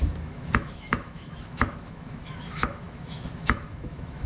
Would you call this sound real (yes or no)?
no